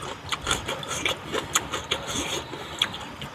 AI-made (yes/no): no